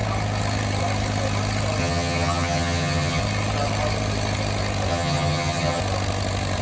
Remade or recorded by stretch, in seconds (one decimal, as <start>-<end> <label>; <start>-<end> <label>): 0.0-1.8 recorded; 1.8-3.2 remade; 3.2-4.9 recorded; 4.9-5.8 remade; 5.8-6.6 recorded